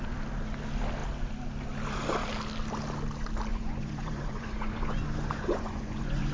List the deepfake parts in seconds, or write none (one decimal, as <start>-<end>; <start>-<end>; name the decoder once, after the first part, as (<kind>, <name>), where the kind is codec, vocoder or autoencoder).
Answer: 3.5-6.3 (vocoder, Vocos)